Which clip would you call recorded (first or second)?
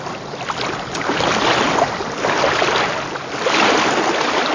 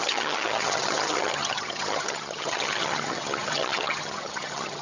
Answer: first